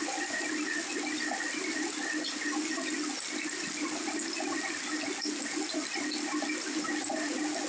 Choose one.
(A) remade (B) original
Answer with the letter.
B